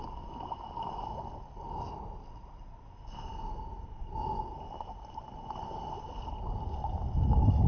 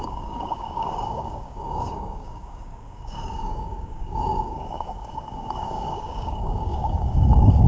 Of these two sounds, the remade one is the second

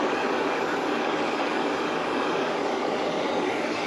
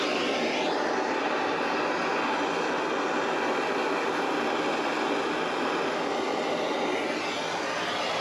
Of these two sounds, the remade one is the first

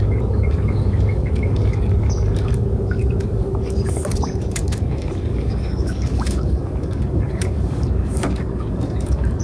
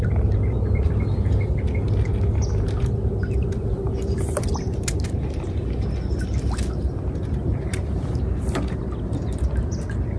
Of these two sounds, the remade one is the first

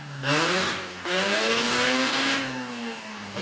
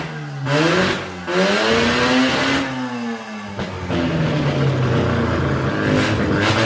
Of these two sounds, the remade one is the first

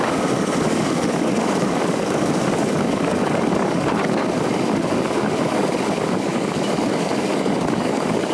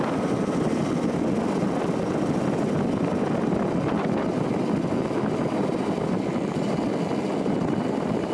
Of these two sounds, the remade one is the first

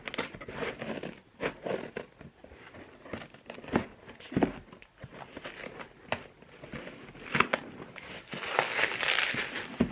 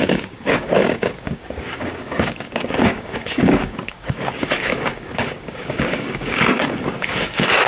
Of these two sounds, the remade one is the second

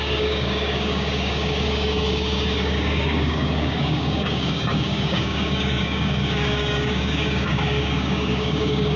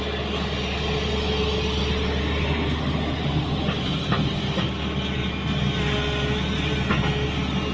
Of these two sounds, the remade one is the first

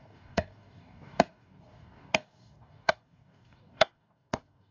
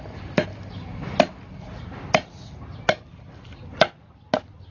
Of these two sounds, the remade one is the first